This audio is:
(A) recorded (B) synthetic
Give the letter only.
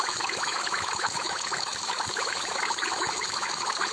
B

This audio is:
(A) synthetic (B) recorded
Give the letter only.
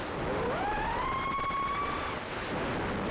B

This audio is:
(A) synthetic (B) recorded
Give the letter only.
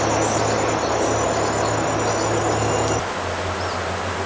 B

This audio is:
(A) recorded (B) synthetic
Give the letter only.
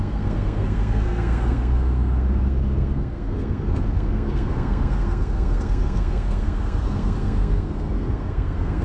B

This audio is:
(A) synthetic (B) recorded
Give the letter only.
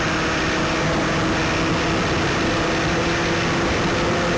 B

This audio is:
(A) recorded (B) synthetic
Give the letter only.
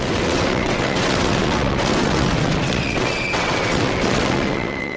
B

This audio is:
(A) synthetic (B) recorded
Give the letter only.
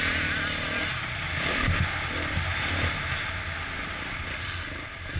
B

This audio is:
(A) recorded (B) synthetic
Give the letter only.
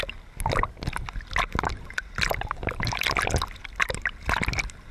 A